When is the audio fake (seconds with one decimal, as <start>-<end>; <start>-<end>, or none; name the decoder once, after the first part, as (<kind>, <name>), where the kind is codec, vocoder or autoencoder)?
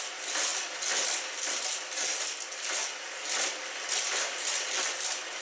none